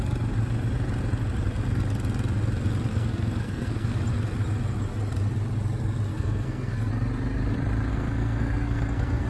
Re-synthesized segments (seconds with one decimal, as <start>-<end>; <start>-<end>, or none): 2.9-4.0; 6.1-6.9; 7.9-9.3